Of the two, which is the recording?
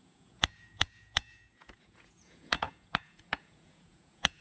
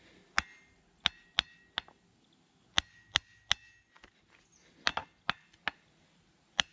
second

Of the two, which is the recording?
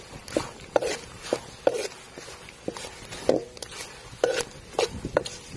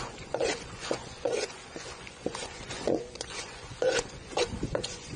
first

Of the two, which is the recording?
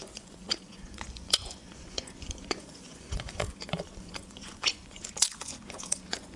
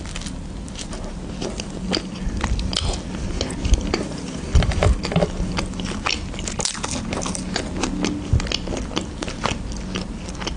second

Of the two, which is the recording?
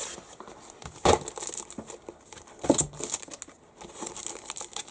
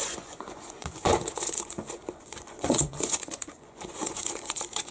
first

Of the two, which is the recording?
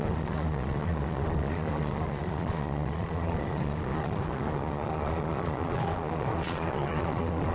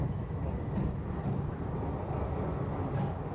second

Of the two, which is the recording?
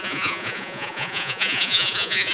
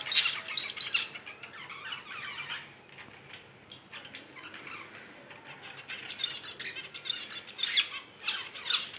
second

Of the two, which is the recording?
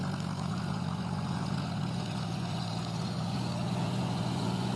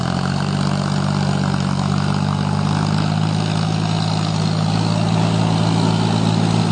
second